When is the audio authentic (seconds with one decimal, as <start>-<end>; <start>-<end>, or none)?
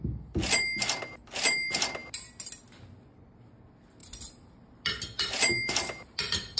0.0-6.6